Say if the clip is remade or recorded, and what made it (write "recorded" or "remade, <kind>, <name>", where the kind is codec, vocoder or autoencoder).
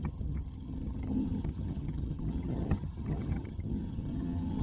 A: remade, vocoder, HiFi-GAN